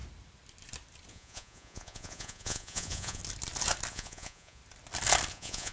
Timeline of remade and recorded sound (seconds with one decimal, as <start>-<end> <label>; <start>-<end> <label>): 0.0-1.1 recorded; 1.1-3.2 remade; 3.2-3.9 recorded; 3.9-4.6 remade; 4.6-5.3 recorded; 5.3-5.7 remade